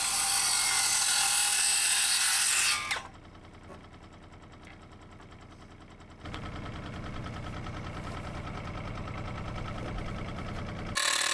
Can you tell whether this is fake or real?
real